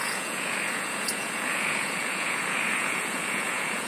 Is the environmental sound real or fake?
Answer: fake